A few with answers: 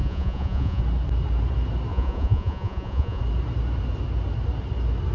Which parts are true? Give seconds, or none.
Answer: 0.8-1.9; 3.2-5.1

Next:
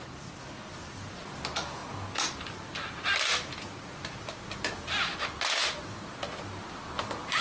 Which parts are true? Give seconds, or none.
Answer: 0.0-7.4

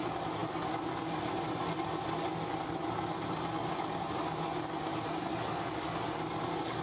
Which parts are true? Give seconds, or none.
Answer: 0.0-6.8

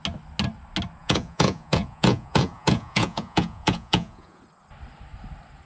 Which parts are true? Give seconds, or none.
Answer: 0.0-1.0; 4.4-5.7

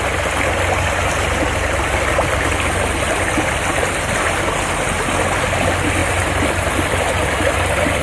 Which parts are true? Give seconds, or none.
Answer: 0.0-8.0